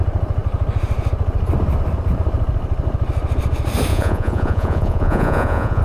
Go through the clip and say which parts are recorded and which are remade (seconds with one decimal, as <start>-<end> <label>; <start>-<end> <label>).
0.0-3.9 recorded; 3.9-5.8 remade